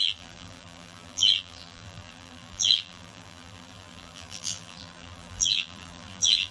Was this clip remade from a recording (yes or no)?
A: yes